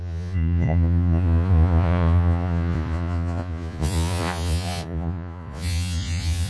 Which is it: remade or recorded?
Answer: remade